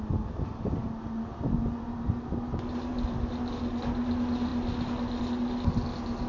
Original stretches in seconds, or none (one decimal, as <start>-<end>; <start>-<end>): 0.0-6.3